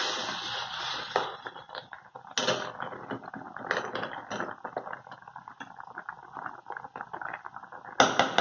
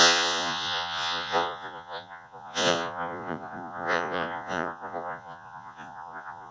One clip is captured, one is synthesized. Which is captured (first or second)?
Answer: first